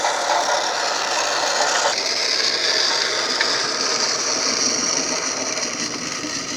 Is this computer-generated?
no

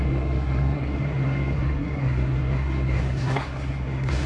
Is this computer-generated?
yes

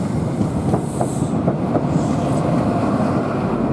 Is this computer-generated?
no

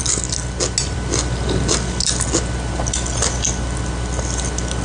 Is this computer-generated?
no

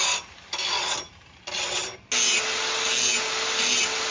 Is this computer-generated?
no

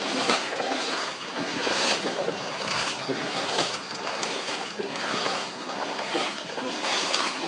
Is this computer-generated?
yes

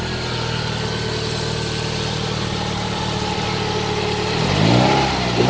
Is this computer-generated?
no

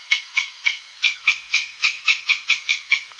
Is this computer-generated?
yes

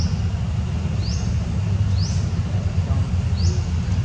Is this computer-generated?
no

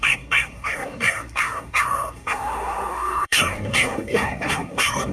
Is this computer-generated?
yes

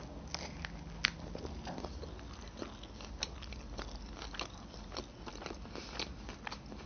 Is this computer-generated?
no